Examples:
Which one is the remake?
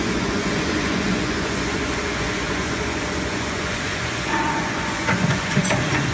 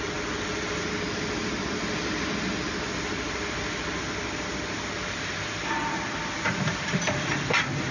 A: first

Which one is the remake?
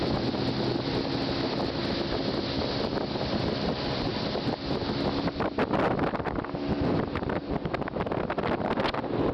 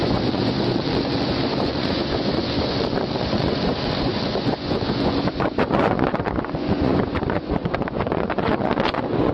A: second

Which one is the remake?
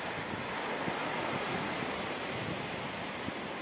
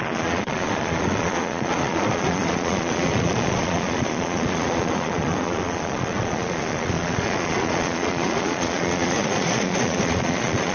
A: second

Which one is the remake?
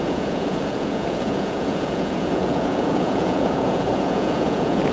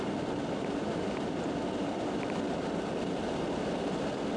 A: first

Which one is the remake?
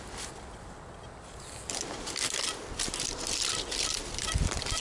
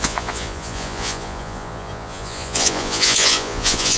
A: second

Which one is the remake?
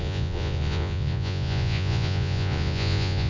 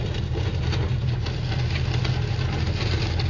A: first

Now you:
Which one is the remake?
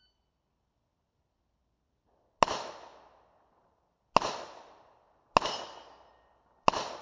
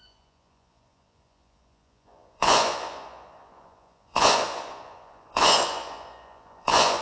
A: second